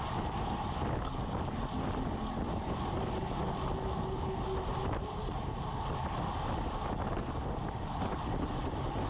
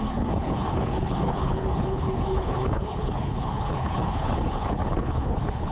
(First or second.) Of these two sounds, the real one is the first